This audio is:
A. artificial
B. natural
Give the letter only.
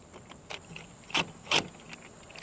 B